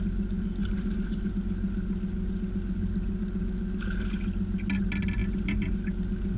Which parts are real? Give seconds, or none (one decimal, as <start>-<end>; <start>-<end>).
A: 0.0-0.6; 1.3-6.4